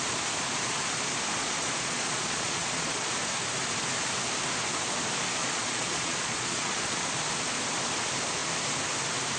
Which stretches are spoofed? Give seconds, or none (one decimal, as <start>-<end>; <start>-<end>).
1.4-3.1; 5.4-7.1